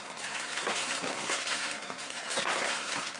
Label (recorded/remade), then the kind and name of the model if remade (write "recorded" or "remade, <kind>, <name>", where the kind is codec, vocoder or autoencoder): remade, codec, SNAC